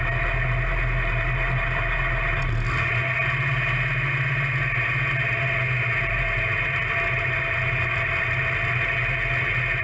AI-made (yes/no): no